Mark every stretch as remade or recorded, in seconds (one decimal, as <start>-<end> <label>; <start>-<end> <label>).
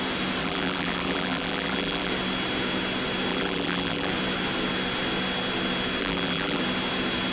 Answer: 0.0-0.4 recorded; 0.4-2.1 remade; 2.1-3.3 recorded; 3.3-4.1 remade; 4.1-6.0 recorded; 6.0-6.6 remade; 6.6-7.3 recorded